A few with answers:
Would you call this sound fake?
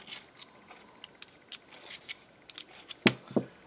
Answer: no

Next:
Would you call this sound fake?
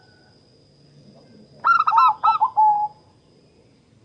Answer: no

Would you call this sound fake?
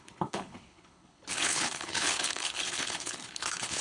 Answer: yes